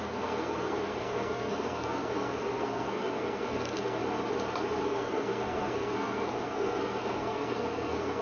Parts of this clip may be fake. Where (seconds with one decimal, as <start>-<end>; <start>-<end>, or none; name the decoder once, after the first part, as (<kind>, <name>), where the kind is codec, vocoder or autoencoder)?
0.0-4.0 (codec, SNAC); 4.8-8.2